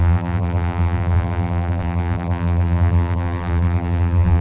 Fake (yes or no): yes